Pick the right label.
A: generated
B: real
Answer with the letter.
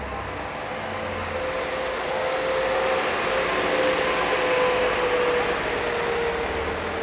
B